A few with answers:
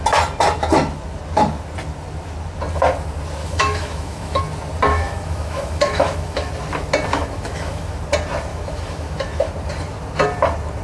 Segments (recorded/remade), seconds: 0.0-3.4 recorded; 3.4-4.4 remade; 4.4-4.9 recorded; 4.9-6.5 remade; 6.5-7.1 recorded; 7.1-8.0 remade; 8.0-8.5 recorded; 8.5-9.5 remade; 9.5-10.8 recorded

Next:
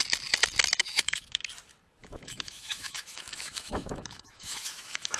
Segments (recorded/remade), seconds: 0.0-0.8 recorded; 0.8-1.4 remade; 1.4-2.0 recorded; 2.0-5.2 remade